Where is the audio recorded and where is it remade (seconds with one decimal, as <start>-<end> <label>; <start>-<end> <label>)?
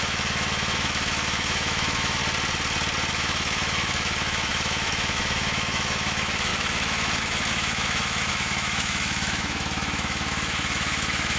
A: 0.0-2.2 remade; 2.2-3.1 recorded; 3.1-11.4 remade